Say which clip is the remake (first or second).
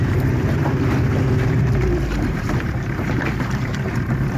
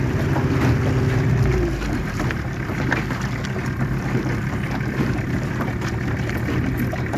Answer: first